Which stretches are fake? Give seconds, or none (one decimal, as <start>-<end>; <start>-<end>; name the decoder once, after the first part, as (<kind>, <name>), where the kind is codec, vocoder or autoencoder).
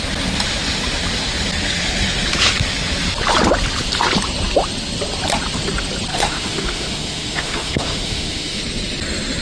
6.1-8.6 (autoencoder, DAC-VAE)